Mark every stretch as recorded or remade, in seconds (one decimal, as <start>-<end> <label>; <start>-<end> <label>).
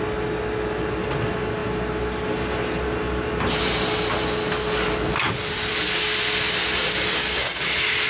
0.0-6.6 recorded; 6.6-7.6 remade; 7.6-8.1 recorded